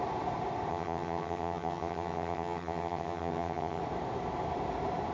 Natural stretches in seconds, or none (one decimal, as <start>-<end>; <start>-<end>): 0.0-0.7; 3.8-5.1